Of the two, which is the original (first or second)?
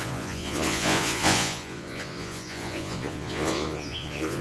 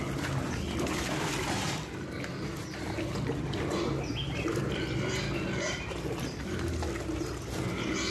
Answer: second